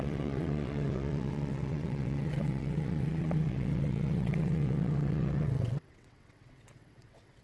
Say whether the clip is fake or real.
fake